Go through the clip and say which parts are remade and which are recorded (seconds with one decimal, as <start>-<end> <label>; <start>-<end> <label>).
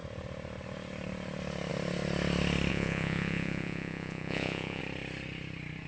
0.0-2.7 recorded; 2.7-4.8 remade; 4.8-5.9 recorded